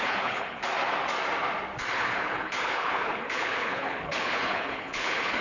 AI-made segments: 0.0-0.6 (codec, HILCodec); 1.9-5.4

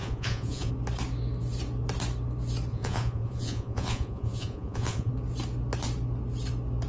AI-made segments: 0.0-0.7 (vocoder, Vocos); 2.7-5.1

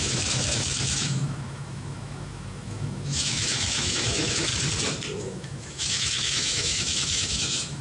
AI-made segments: 0.0-4.5 (autoencoder, DAC-VAE); 5.2-7.8

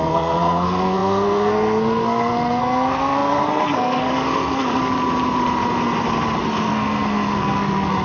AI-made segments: 0.0-4.8 (codec, SNAC); 6.4-8.0